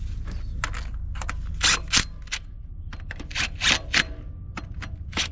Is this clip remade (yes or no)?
no